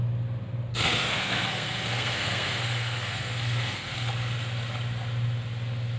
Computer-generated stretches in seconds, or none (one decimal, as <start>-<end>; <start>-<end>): 0.7-4.1